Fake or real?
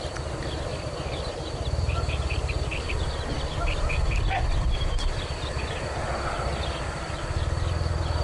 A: real